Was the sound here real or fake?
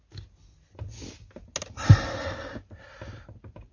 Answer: real